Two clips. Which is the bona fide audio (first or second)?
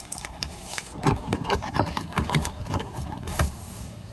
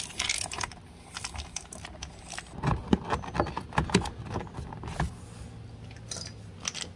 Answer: second